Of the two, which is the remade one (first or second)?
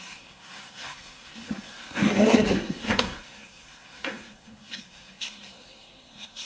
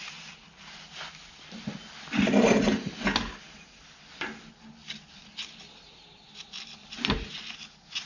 first